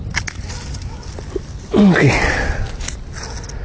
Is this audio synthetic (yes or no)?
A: no